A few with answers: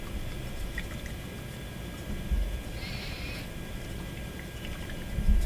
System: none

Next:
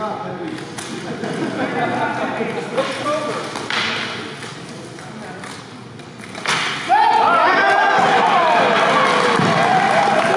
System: none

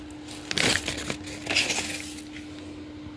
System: none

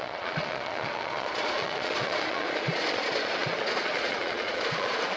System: vocoder, Vocos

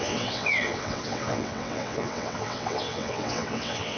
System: vocoder, WaveNeXt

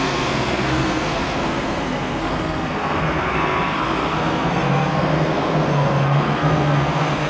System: codec, SNAC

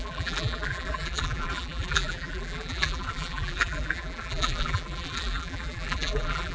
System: vocoder, BigVGAN v2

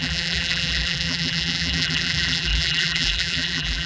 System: vocoder, BigVGAN v2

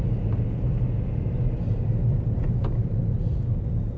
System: none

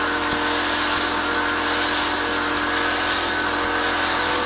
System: none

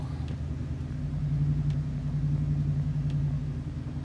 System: none